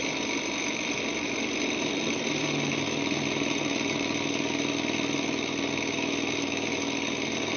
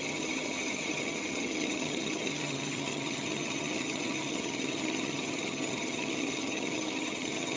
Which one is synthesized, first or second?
second